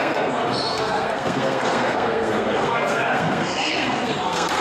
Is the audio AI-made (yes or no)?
yes